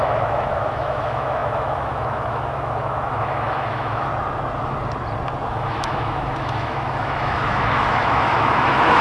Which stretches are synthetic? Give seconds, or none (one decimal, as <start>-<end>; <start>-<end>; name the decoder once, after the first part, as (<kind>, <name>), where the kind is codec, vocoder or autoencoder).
0.0-4.1 (autoencoder, DAC-VAE); 5.5-9.0